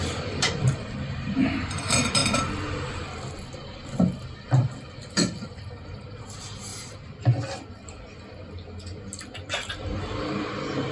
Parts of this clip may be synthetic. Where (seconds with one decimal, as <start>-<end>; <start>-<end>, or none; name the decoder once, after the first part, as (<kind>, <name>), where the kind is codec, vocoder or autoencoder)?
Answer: 0.0-2.2 (vocoder, BigVGAN v2); 4.9-6.7; 9.7-10.9

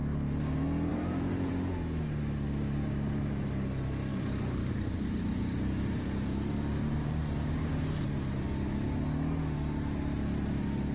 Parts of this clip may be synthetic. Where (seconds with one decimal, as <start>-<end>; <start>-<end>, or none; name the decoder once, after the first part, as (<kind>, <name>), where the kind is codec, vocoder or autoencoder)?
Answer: 0.9-1.5 (vocoder, BigVGAN v2); 4.1-7.2